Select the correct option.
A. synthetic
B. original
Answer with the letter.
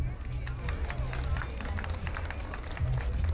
B